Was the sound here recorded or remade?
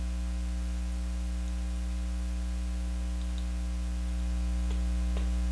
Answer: recorded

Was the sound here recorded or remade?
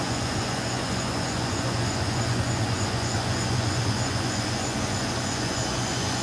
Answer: remade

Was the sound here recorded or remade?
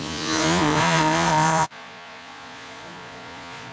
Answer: remade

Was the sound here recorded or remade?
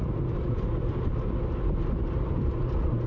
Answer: recorded